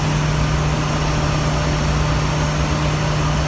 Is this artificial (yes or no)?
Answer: no